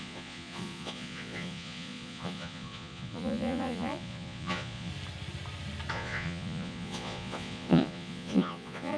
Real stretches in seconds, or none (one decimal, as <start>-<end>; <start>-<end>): 4.9-5.9